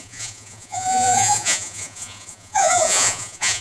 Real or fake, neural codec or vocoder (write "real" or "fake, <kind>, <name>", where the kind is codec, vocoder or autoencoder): fake, vocoder, Vocos